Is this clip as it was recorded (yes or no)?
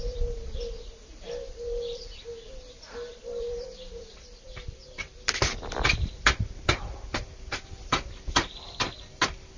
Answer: no